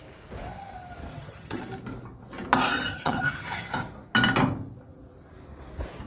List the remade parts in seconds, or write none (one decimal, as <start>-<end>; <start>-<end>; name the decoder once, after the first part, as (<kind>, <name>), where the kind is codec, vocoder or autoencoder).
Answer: 1.1-1.6 (vocoder, HiFi-GAN); 2.9-3.7